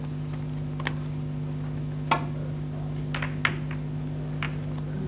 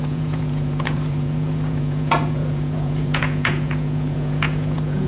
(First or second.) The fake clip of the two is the second